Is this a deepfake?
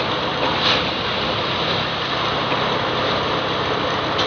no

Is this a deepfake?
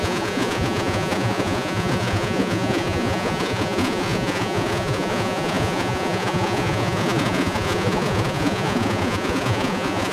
yes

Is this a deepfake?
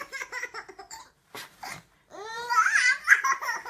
yes